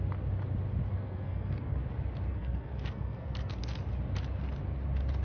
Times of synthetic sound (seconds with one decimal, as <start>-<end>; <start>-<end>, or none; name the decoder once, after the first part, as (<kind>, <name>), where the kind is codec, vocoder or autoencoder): 0.9-1.8 (codec, SNAC); 2.3-3.6